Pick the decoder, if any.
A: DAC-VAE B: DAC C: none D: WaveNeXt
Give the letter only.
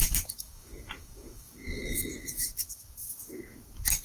B